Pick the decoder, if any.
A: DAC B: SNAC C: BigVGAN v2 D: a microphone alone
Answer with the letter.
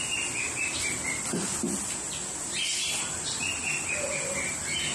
D